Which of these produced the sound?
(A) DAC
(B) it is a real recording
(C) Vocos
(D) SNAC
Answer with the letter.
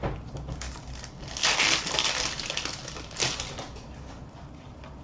B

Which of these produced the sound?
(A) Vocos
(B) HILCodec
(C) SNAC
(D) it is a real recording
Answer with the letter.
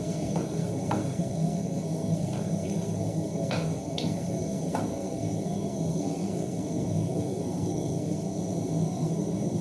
C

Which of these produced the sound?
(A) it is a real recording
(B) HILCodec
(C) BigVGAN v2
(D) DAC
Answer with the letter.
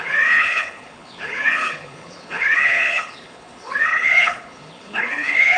B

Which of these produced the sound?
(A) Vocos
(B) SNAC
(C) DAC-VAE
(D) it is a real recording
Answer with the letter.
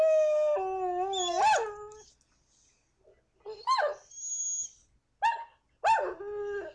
D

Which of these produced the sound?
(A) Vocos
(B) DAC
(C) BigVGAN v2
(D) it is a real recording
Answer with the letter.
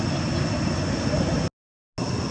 D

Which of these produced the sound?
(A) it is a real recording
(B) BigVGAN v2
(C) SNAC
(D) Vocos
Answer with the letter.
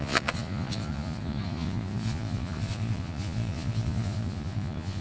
D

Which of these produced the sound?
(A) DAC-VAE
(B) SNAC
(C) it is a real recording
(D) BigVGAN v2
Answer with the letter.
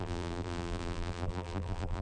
D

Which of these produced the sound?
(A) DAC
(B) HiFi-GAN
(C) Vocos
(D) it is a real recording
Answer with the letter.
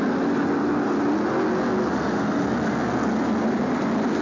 D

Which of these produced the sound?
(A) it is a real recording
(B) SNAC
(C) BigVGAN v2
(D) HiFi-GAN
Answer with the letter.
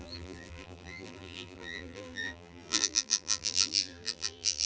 C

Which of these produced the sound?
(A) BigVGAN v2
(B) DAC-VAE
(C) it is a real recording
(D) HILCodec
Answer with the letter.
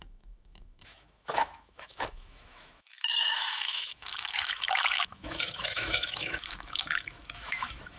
B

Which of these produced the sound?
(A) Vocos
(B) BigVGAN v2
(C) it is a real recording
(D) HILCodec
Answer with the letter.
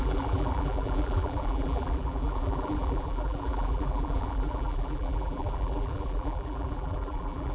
B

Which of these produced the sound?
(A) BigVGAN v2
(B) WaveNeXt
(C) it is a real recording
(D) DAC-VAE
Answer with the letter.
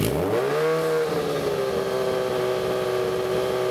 C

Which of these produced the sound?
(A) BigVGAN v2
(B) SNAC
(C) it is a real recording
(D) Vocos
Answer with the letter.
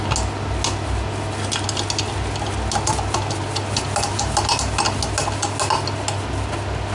C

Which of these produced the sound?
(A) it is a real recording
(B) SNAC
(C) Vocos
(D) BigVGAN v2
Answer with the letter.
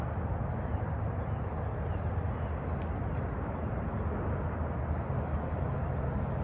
A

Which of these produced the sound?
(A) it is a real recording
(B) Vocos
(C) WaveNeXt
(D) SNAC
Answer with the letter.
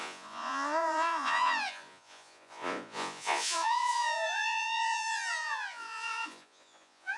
B